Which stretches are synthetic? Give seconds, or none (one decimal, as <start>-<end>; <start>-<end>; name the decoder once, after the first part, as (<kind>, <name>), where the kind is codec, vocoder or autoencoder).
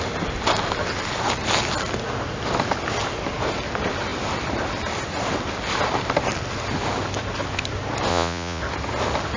8.1-8.6 (vocoder, Vocos)